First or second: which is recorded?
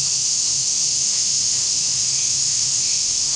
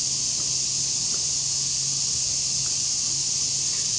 second